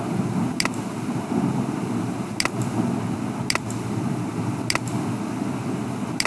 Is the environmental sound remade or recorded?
recorded